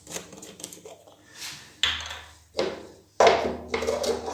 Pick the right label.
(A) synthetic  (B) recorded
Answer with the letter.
B